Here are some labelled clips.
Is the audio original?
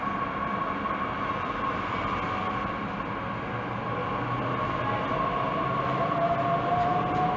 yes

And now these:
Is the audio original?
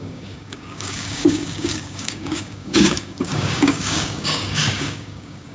no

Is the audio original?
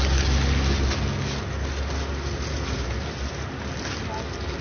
yes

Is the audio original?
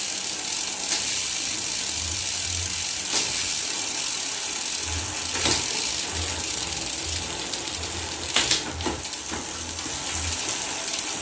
yes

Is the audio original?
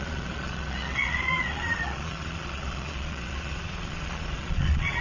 no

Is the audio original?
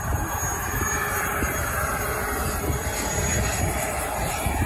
yes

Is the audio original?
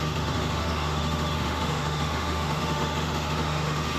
no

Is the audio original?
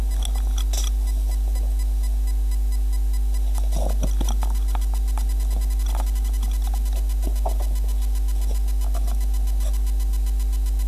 yes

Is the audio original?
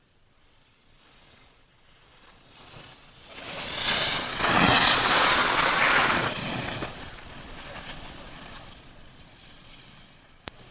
no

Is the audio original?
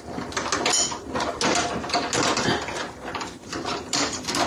yes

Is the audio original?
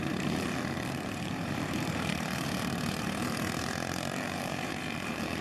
no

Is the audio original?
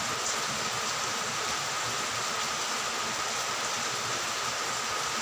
yes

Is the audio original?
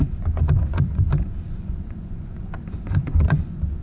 no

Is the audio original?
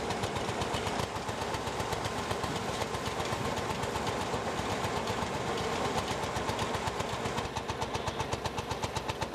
yes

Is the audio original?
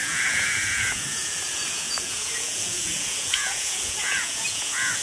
no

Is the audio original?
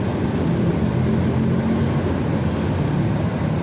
yes